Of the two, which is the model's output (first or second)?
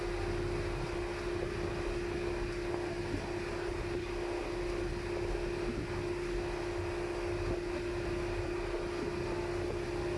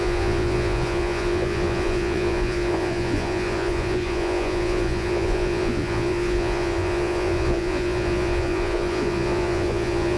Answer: second